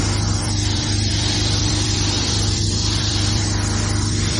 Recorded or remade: remade